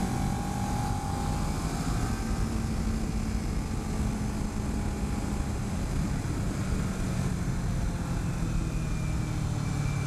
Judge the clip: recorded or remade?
recorded